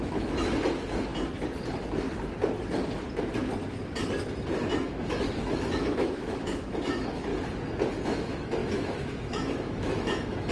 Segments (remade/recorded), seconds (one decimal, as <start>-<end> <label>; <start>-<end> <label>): 0.0-1.1 remade; 1.1-4.7 recorded; 4.7-7.3 remade; 7.3-7.9 recorded; 7.9-10.5 remade